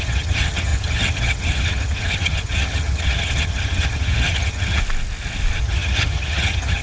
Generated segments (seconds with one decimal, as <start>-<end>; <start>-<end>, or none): 0.0-4.8; 5.6-6.8